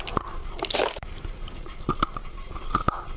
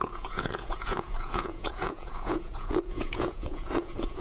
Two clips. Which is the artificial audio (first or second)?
second